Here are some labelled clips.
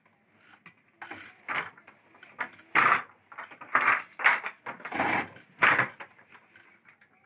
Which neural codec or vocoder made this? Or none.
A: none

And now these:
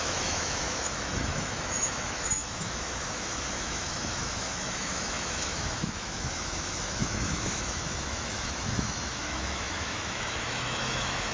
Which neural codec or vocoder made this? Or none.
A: autoencoder, DAC-VAE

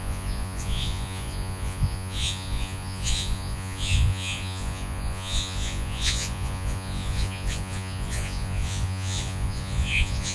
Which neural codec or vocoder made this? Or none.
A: vocoder, Vocos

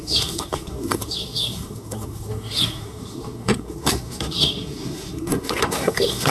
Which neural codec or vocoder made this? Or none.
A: codec, SNAC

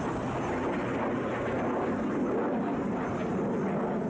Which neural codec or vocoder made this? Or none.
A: none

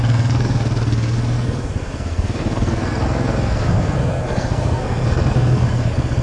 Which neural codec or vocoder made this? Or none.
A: codec, SNAC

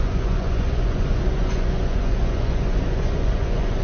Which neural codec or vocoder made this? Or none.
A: vocoder, Vocos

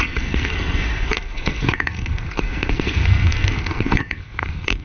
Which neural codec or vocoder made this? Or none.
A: codec, SNAC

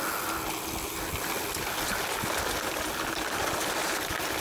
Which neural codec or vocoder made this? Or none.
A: none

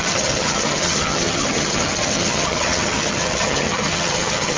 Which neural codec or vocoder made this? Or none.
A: vocoder, HiFi-GAN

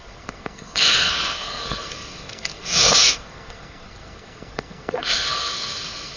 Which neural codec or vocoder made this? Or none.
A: codec, SNAC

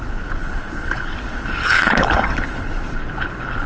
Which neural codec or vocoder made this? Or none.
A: codec, HILCodec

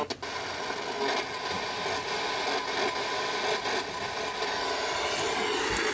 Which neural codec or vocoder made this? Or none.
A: none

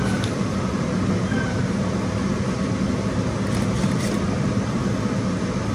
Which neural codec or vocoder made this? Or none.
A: none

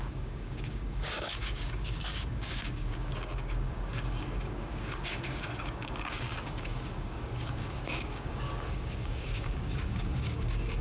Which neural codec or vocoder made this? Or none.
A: codec, DAC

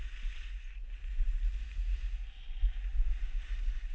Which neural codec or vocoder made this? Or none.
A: none